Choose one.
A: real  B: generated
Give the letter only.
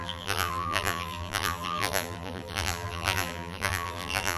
B